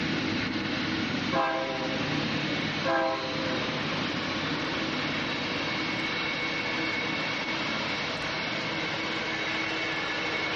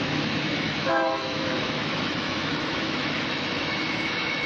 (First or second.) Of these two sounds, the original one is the first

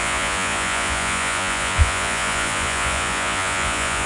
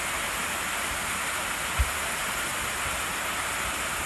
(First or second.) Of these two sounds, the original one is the second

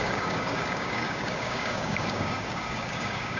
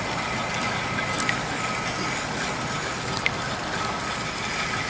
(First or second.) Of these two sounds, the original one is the second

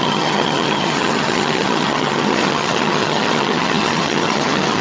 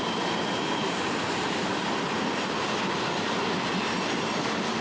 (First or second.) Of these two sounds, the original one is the second